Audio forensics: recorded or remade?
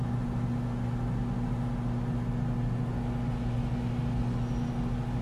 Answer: recorded